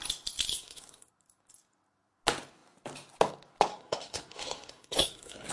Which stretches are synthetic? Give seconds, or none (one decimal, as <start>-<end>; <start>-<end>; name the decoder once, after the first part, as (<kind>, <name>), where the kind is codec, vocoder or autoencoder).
0.5-1.1 (codec, SNAC); 3.7-5.5

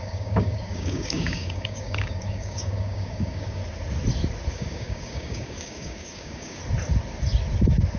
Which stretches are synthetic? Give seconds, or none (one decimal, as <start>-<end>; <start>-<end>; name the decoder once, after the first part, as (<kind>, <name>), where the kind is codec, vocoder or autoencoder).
0.0-3.6 (codec, DAC); 4.5-6.6

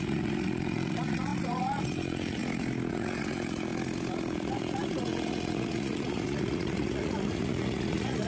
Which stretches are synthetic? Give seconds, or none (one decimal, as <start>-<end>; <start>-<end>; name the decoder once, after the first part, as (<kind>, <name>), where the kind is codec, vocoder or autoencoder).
0.0-2.4 (vocoder, Vocos); 2.9-3.7; 4.3-8.3